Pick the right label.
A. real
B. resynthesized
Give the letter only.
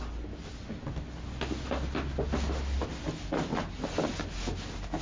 A